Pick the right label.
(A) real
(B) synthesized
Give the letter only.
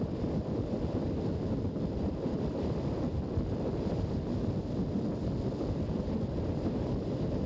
A